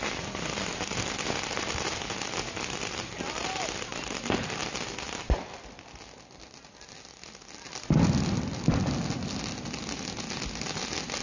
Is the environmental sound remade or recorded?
recorded